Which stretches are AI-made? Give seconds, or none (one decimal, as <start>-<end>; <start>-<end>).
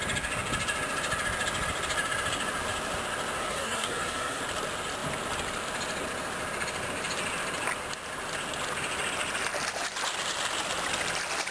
3.4-4.4